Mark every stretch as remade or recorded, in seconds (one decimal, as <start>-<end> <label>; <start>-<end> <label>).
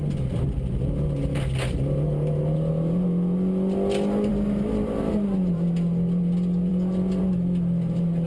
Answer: 0.0-8.3 recorded